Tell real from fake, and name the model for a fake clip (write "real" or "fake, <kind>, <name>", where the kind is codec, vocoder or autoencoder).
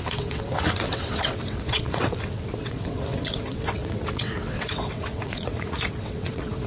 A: fake, vocoder, WaveNeXt